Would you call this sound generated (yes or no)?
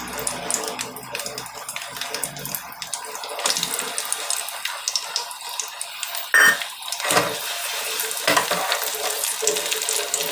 no